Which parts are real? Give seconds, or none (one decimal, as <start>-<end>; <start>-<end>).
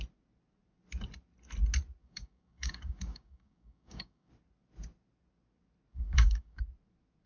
0.0-2.0; 4.3-5.9; 6.6-7.3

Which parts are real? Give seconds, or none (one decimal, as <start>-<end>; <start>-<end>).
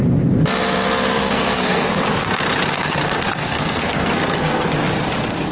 0.0-1.2; 1.9-2.7; 4.7-5.5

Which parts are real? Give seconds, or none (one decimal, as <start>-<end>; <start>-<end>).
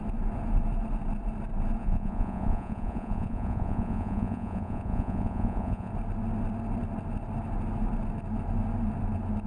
0.0-1.8; 5.9-9.5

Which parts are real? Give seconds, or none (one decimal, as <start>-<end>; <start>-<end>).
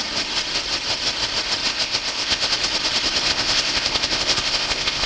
0.0-1.7; 2.5-3.3